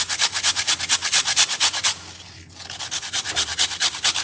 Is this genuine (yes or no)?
yes